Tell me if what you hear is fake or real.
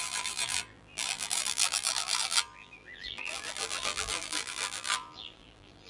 fake